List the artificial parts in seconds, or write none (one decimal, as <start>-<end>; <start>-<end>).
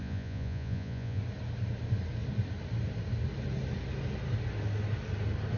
0.0-1.2